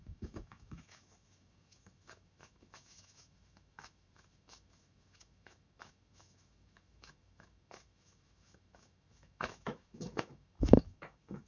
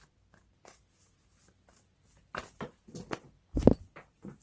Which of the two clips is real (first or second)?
second